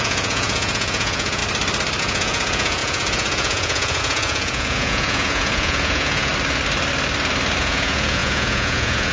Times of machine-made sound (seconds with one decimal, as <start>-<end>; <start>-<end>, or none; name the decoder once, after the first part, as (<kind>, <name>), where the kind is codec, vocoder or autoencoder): 0.0-1.4 (vocoder, Vocos); 2.0-6.3; 7.6-9.1